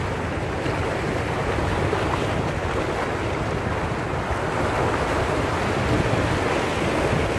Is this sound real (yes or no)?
yes